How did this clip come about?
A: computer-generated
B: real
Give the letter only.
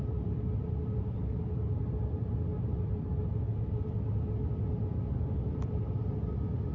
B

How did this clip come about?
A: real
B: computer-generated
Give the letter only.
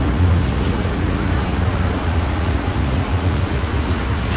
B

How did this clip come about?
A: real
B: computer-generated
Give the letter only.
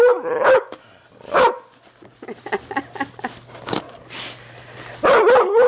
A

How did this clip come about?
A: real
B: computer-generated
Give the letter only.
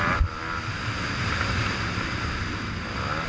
A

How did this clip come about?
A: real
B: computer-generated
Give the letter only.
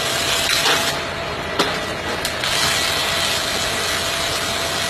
A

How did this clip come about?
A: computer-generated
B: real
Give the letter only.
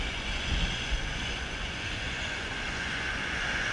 A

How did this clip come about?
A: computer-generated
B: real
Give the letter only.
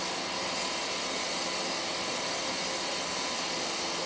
B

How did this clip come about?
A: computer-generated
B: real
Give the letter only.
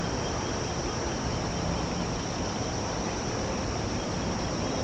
B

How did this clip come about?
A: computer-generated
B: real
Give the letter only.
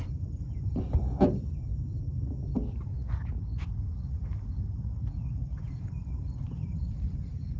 B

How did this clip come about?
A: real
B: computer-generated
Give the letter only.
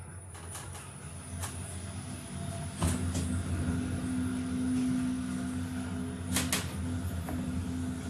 A